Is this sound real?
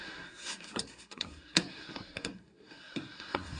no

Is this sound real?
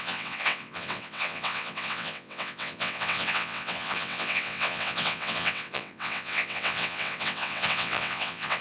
no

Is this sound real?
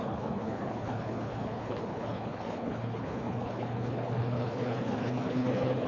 no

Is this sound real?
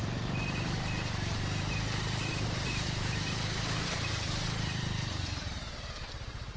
no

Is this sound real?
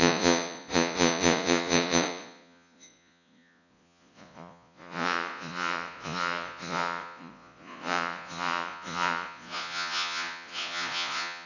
no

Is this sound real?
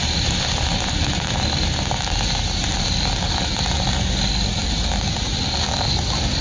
yes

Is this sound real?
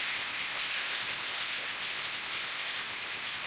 no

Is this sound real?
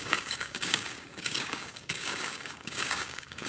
no